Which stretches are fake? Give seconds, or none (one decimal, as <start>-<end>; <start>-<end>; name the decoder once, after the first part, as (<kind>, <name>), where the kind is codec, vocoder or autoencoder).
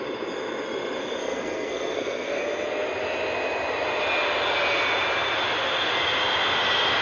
1.2-2.4 (codec, SNAC)